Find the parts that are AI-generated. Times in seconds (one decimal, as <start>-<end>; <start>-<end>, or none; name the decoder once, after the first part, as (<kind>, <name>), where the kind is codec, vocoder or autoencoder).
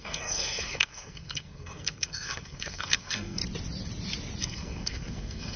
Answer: 0.0-3.4 (codec, SNAC); 4.4-5.6